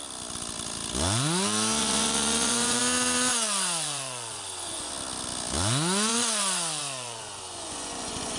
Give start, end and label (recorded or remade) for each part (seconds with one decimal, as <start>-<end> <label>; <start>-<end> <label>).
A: 0.0-1.8 recorded; 1.8-2.8 remade; 2.8-3.3 recorded; 3.3-4.9 remade; 4.9-6.1 recorded; 6.1-8.4 remade